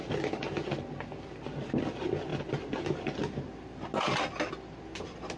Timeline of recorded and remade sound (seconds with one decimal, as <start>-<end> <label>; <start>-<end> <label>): 0.0-5.4 recorded